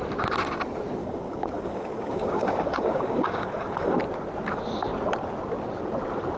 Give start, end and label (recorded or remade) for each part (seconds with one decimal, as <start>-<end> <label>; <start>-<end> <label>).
0.0-1.0 recorded; 1.0-4.0 remade; 4.0-6.4 recorded